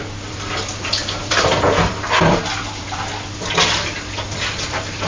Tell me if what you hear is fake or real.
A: fake